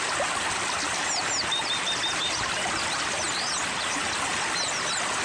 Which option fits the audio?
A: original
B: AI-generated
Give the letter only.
A